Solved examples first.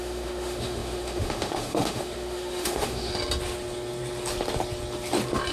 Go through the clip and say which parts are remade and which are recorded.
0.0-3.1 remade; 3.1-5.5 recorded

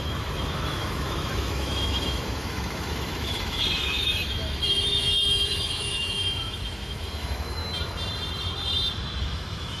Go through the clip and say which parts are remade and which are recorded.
0.0-7.6 remade; 7.6-9.2 recorded; 9.2-9.8 remade